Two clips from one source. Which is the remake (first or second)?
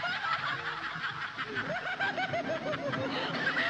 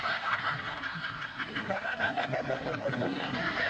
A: second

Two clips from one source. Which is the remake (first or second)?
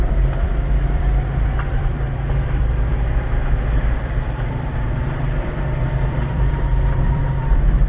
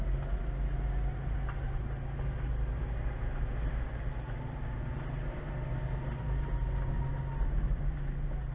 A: first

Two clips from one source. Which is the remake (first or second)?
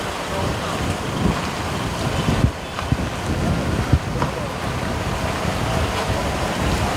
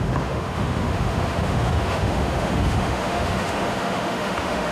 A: second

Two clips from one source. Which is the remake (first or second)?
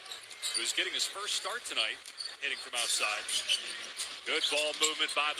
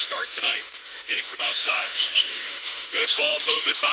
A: second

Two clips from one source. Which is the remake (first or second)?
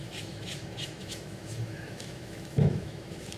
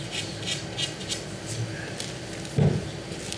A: first